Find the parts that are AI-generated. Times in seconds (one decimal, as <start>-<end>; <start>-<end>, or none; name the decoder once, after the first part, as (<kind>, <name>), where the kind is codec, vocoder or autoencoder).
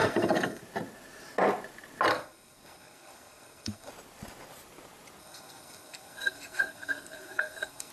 0.0-0.6 (codec, SNAC); 2.1-3.9; 5.2-7.9